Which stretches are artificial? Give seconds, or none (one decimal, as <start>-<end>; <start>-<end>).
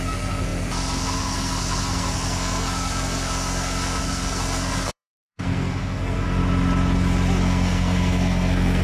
0.0-6.4; 7.4-8.8